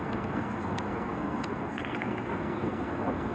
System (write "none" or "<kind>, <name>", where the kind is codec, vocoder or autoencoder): codec, SNAC